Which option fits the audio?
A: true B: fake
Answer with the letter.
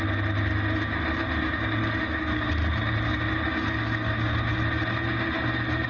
A